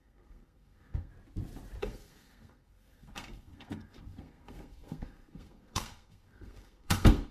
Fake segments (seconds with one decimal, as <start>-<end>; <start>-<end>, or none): 0.0-1.1; 1.8-7.3